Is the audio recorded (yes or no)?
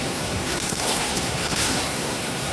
no